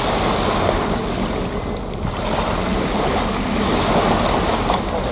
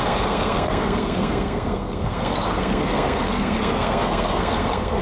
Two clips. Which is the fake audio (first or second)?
second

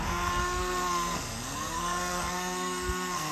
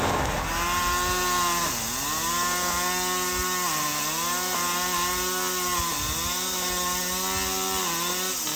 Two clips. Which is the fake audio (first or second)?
first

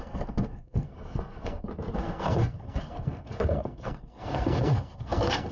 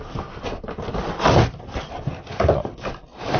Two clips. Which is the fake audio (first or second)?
first